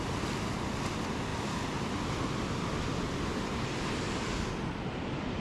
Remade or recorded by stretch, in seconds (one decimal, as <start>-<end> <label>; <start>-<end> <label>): 0.0-5.4 recorded